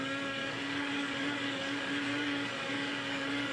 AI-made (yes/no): yes